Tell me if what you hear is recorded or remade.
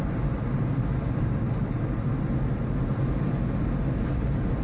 recorded